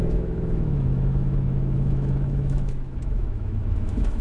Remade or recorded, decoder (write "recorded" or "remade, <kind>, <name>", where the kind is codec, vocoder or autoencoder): remade, autoencoder, DAC-VAE